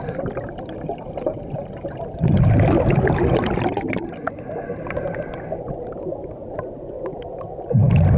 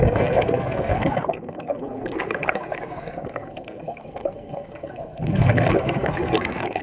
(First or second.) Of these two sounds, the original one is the first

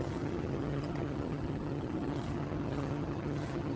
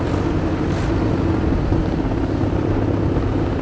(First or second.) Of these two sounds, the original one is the second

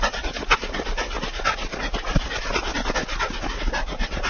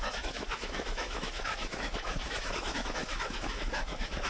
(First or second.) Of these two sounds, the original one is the first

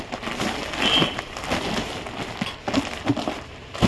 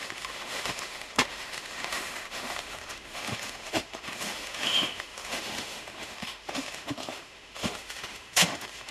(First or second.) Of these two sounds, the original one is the first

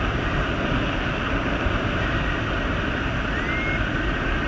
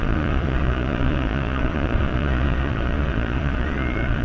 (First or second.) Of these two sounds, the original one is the first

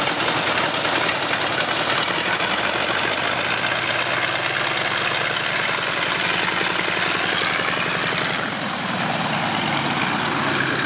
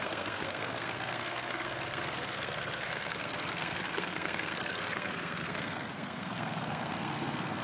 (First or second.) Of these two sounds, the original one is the first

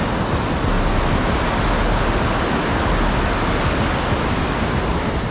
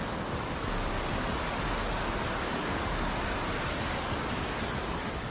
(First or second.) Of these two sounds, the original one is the first